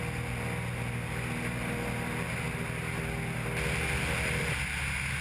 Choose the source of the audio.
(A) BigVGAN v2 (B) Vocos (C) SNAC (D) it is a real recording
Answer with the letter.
D